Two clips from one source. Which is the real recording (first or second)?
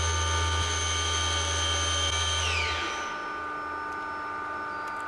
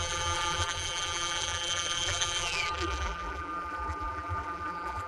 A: first